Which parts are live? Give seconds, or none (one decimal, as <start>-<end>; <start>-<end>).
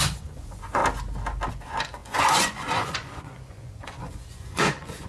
0.8-1.5